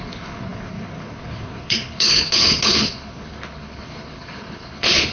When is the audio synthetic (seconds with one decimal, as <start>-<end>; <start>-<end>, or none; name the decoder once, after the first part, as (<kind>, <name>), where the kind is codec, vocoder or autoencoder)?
0.0-5.1 (codec, HILCodec)